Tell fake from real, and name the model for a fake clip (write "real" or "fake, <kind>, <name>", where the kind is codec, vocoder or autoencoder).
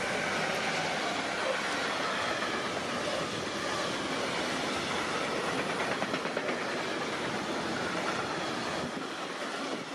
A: real